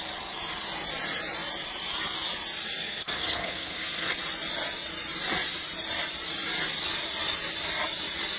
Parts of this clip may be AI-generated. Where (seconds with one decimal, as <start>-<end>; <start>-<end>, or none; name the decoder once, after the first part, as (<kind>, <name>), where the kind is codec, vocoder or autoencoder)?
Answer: 2.8-4.1 (codec, SNAC)